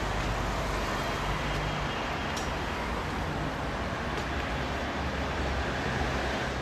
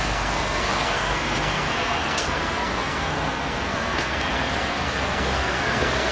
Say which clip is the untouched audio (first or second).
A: first